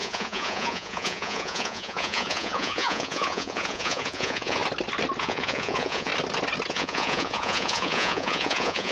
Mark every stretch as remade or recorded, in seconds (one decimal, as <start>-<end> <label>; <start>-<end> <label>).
0.0-4.6 remade; 4.6-5.2 recorded; 5.2-6.1 remade; 6.1-6.7 recorded; 6.7-8.9 remade